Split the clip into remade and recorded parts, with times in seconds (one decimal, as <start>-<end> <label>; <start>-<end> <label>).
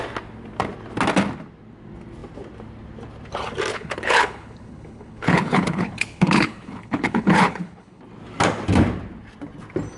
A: 0.0-3.7 recorded; 3.7-8.0 remade; 8.0-10.0 recorded